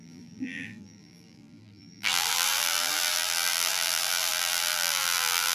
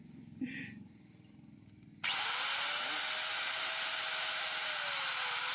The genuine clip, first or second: second